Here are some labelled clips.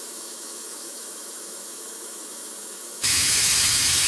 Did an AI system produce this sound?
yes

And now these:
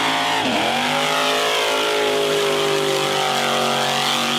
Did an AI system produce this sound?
no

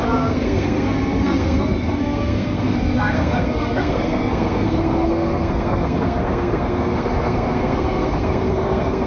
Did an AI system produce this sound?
yes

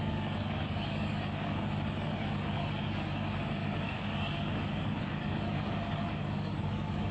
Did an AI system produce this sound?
yes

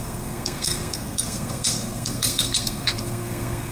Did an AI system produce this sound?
yes